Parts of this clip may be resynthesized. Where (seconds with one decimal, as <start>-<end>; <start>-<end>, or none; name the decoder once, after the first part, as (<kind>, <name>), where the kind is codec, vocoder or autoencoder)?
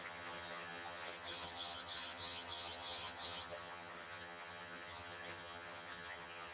0.0-6.5 (vocoder, HiFi-GAN)